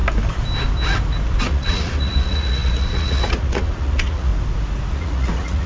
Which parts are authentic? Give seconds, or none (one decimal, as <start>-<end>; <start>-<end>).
0.0-1.4; 4.3-4.9